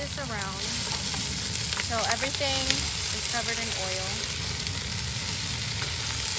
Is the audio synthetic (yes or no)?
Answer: no